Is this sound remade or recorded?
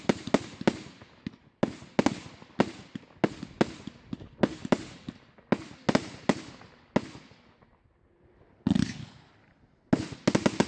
recorded